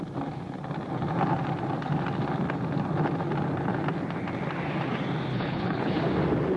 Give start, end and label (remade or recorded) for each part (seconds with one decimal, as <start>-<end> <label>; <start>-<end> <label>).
0.0-5.3 recorded; 5.3-6.0 remade; 6.0-6.6 recorded